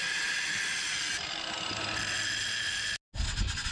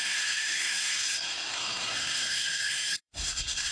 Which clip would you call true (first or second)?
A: first